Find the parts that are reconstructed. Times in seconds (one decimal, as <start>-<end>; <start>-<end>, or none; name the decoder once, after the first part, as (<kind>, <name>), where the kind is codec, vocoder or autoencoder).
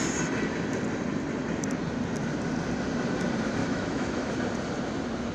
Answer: 3.6-4.3 (autoencoder, DAC-VAE)